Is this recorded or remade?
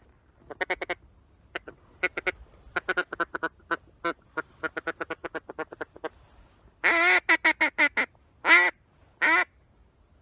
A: recorded